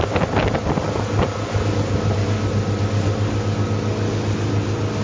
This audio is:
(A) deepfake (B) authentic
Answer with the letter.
B